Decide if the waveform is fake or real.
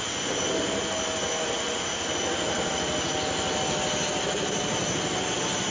real